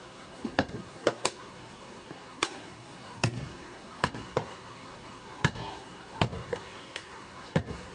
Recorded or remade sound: remade